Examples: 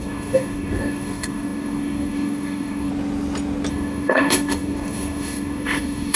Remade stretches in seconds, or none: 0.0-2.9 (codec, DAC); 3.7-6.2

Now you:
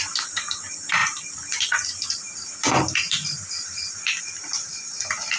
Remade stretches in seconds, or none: 0.0-5.4 (vocoder, BigVGAN v2)

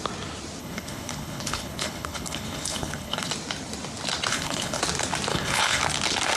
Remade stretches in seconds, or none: 0.6-3.3 (codec, HILCodec); 4.3-4.8; 5.3-5.8

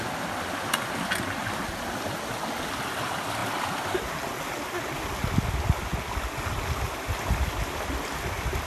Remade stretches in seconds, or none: 3.4-4.4 (vocoder, BigVGAN v2)